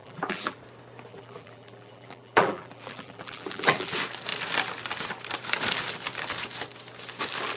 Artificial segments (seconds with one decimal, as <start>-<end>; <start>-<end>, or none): 0.0-0.6; 1.1-3.9

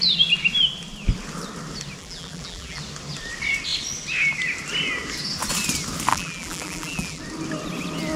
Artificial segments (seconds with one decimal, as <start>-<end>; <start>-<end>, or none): 2.0-2.8; 6.1-7.2

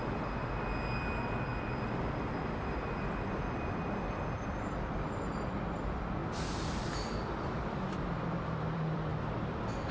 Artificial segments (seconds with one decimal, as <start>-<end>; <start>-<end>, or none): 0.0-6.2; 6.8-9.1